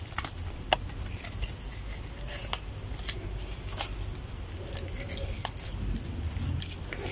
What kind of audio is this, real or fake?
real